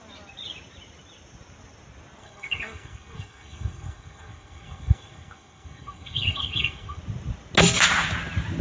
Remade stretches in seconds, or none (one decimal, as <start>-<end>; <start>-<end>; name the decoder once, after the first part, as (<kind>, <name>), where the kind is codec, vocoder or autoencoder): 2.2-7.0 (codec, SNAC)

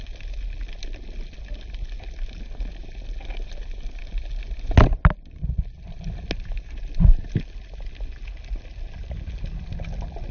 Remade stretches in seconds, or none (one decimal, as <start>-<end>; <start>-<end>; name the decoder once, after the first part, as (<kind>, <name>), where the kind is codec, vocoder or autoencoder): none

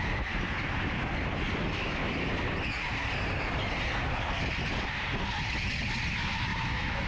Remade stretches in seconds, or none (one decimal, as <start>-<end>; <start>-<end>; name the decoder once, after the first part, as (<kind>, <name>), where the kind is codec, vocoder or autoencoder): 1.6-2.0 (autoencoder, DAC-VAE); 6.1-7.1

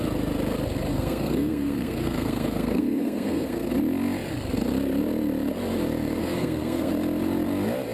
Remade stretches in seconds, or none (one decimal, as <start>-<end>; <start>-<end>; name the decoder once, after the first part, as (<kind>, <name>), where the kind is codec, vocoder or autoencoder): 0.9-3.7 (codec, SNAC); 6.2-6.9

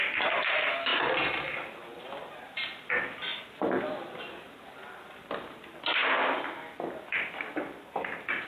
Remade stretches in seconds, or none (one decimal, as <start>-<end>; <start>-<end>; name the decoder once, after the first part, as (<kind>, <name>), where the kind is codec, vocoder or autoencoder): none

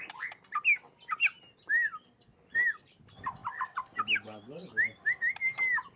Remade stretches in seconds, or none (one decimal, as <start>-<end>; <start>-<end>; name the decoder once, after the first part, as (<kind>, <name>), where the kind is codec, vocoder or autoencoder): none

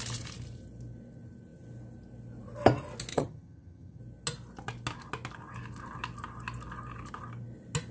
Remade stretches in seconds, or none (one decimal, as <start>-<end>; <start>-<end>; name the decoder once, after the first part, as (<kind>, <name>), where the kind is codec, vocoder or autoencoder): 3.1-4.0 (vocoder, HiFi-GAN)

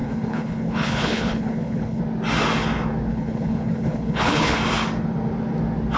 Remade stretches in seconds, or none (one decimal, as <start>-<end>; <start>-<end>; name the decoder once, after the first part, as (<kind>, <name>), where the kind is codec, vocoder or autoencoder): 0.0-2.0 (codec, HILCodec); 3.1-4.6